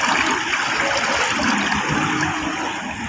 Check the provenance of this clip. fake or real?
real